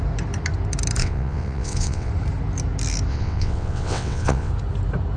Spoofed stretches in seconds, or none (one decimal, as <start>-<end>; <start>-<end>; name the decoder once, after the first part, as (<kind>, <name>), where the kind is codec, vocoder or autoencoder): 1.0-2.1 (vocoder, WaveNeXt); 3.1-4.5